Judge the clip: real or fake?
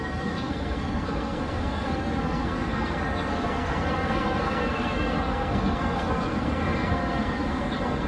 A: fake